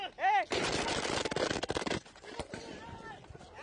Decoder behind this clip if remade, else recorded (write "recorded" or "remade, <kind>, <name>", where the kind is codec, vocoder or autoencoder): recorded